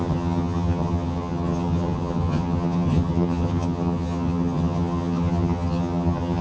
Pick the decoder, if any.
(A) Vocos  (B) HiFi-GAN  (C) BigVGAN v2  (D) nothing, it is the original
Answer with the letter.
B